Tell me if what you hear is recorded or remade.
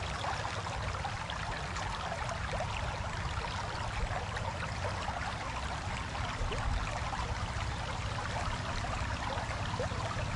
recorded